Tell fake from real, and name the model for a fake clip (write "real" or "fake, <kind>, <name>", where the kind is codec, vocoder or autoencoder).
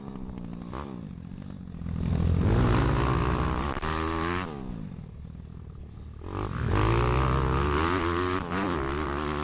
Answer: real